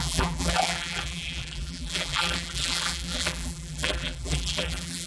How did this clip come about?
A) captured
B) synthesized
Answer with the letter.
B